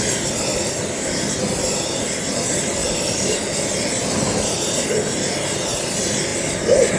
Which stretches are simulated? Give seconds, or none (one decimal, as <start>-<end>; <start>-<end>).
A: 0.5-1.2